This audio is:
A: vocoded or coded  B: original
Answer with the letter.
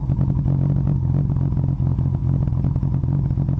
B